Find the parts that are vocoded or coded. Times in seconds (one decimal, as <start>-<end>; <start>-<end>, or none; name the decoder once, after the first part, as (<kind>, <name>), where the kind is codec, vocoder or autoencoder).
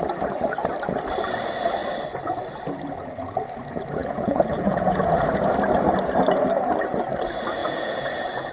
4.0-5.5 (vocoder, Vocos); 7.6-8.5